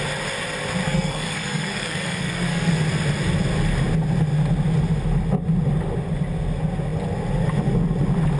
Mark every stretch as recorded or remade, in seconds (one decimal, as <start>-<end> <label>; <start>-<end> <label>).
0.0-0.8 recorded; 0.8-2.7 remade; 2.7-8.4 recorded